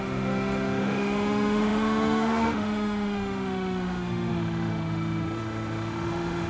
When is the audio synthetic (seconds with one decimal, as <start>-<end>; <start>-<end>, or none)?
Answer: 0.0-6.5